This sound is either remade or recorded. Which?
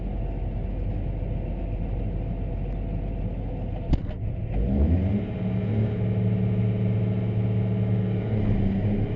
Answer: recorded